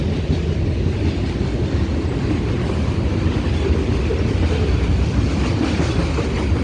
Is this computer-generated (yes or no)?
no